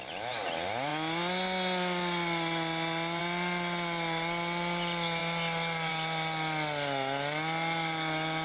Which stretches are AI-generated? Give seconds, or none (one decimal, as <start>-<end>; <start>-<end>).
none